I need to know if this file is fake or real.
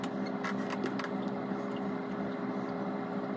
real